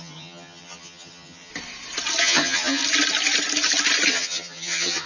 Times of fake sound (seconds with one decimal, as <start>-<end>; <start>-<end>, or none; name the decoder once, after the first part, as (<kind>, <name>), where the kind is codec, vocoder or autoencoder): 0.0-1.5 (vocoder, HiFi-GAN); 2.2-2.8; 4.1-5.1

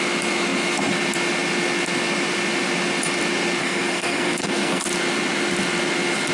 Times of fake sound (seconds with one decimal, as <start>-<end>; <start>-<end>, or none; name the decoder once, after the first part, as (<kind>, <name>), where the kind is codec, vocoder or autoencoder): 3.6-4.8 (codec, SNAC)

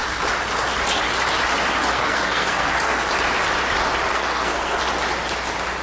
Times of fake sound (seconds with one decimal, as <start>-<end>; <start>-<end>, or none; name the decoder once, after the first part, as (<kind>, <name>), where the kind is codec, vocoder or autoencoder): 1.8-3.1 (codec, SNAC); 4.1-4.8

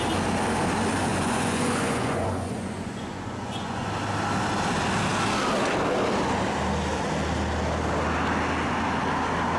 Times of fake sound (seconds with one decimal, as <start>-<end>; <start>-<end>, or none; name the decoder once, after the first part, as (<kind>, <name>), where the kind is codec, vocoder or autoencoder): 1.1-3.9 (vocoder, Vocos)

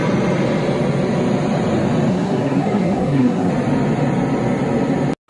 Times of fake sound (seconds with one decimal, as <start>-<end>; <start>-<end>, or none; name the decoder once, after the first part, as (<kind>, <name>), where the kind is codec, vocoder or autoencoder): 2.1-3.5 (codec, SNAC)

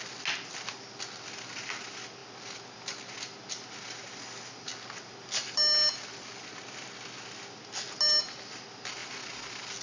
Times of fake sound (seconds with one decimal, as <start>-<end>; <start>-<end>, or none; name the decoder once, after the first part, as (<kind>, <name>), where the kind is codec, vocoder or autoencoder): none

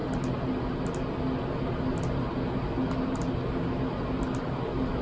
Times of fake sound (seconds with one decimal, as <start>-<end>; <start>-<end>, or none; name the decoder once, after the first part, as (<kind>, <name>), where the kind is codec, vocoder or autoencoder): none

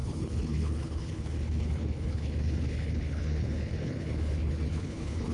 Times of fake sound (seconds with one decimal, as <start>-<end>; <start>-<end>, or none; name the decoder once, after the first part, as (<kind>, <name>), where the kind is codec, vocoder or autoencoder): 0.0-5.3 (codec, HILCodec)